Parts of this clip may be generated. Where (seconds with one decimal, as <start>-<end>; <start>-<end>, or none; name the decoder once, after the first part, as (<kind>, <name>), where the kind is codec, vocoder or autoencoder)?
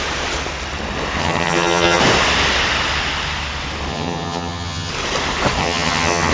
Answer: 1.2-2.0 (vocoder, HiFi-GAN); 3.9-4.9; 5.6-6.3